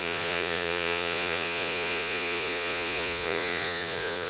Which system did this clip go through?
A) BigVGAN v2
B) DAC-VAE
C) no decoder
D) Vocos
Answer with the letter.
D